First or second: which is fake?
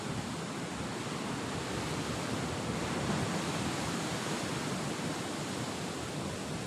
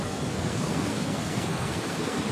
second